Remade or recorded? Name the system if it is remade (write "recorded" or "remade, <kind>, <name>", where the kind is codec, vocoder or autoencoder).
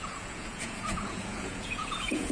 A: remade, vocoder, Vocos